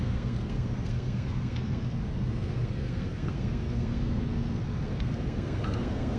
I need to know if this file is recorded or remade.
remade